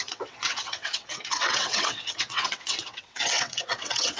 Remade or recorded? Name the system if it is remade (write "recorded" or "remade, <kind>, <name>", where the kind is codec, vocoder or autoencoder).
remade, vocoder, WaveNeXt